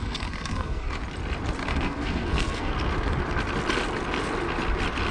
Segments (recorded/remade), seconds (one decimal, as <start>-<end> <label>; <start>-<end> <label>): 0.0-1.0 remade; 1.0-1.7 recorded; 1.7-2.7 remade; 2.7-5.1 recorded